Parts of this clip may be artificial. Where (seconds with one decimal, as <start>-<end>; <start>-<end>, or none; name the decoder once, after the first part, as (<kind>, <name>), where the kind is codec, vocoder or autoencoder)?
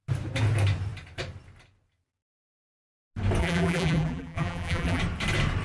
3.4-5.0 (vocoder, BigVGAN v2)